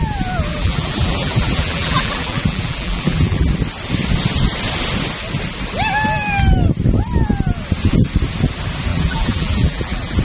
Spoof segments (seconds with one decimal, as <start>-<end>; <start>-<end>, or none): 0.5-3.5; 8.9-10.2

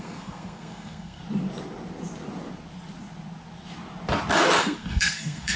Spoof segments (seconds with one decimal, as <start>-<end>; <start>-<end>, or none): 0.0-1.2; 4.6-5.6